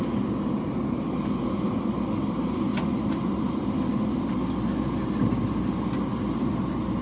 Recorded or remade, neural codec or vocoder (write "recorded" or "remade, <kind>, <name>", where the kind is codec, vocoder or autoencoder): recorded